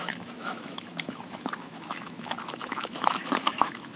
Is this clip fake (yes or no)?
yes